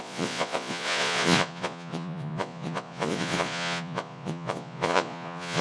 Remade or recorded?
remade